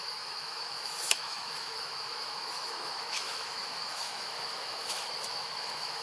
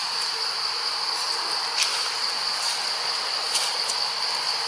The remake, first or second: first